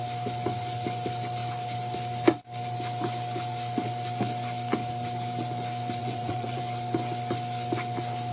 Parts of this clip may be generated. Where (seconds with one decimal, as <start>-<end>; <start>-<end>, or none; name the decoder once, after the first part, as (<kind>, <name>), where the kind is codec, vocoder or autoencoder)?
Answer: 6.0-6.6 (vocoder, WaveNeXt)